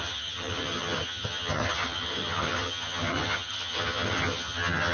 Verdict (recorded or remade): remade